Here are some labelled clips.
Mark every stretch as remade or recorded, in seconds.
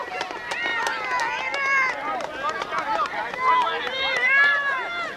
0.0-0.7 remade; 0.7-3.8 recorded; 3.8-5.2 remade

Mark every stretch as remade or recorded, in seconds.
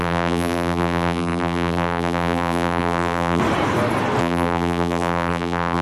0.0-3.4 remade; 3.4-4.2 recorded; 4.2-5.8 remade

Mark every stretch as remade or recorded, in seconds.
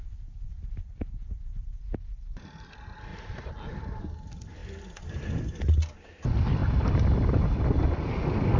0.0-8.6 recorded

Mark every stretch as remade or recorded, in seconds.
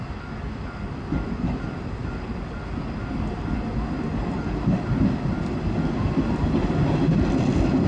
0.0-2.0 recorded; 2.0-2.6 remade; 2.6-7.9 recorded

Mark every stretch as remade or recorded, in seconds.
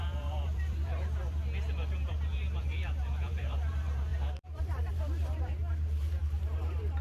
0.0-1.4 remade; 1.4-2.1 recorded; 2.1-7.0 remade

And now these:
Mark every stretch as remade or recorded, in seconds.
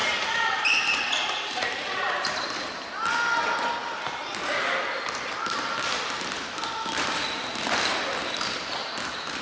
0.0-2.5 remade; 2.5-9.4 recorded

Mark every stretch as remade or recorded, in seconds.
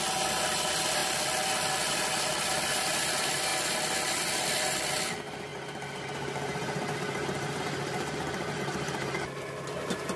0.0-10.2 recorded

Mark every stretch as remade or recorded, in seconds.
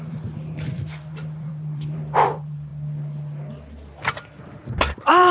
0.0-2.7 remade; 2.7-4.2 recorded; 4.2-5.3 remade